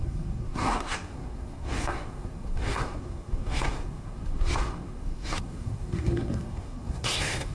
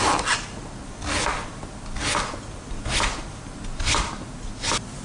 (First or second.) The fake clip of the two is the first